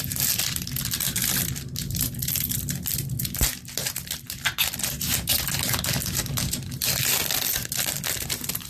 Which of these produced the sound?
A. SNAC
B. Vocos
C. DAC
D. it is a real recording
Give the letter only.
D